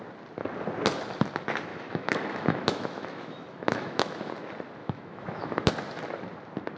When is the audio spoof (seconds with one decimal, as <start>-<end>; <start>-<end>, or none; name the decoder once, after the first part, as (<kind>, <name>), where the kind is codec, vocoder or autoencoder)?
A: 1.7-4.3 (autoencoder, DAC-VAE); 4.8-5.7

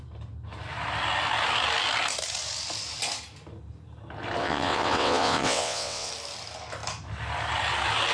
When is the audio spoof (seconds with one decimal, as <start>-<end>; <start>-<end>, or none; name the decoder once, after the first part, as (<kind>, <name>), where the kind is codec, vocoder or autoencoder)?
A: 4.4-6.1 (vocoder, WaveNeXt)

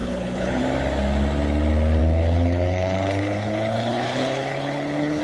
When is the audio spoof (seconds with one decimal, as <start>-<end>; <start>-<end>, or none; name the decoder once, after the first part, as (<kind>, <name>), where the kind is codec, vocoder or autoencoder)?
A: 0.0-0.6 (codec, HILCodec); 2.0-5.2

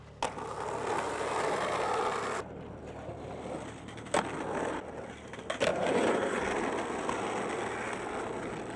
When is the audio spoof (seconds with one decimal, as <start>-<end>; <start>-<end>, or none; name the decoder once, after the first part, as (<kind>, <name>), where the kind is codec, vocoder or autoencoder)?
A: 5.7-6.4 (vocoder, Vocos)

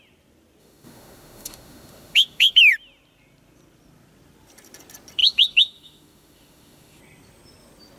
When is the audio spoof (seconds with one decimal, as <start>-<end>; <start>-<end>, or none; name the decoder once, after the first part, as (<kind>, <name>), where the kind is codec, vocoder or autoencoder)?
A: 0.6-2.6 (autoencoder, DAC-VAE); 5.2-7.0